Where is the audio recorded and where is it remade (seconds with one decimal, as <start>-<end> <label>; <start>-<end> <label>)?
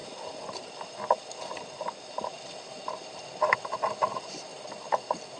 0.0-5.4 recorded